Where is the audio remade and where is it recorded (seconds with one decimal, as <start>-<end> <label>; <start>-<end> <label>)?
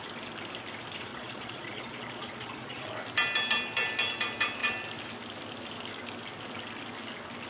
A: 0.0-1.1 recorded; 1.1-2.9 remade; 2.9-7.5 recorded